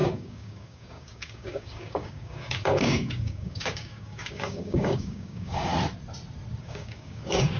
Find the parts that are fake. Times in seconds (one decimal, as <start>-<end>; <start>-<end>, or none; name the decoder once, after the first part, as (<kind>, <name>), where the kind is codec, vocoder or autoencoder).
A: 0.0-5.7 (codec, DAC); 6.6-7.6